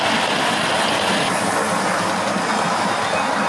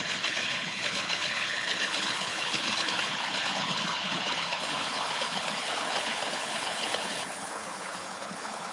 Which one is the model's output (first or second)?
second